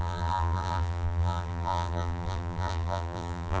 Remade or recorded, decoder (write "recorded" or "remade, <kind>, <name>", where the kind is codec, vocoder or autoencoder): remade, vocoder, BigVGAN v2